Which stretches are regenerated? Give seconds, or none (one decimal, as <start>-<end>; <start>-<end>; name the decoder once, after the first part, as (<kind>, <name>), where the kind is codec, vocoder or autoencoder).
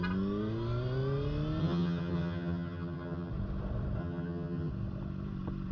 1.6-3.3 (vocoder, HiFi-GAN); 4.0-4.7